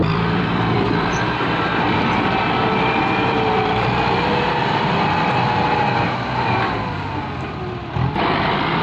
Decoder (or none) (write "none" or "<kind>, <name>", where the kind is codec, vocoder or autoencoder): vocoder, BigVGAN v2